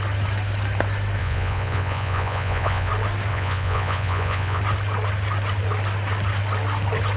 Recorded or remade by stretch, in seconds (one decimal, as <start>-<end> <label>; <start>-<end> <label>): 0.0-1.2 recorded; 1.2-2.9 remade; 2.9-3.3 recorded; 3.3-4.6 remade; 4.6-7.2 recorded